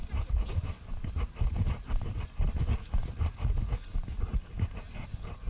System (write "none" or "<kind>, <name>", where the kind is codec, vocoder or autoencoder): none